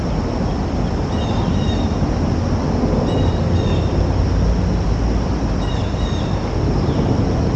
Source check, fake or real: real